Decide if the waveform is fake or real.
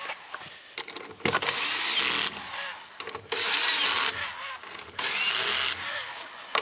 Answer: real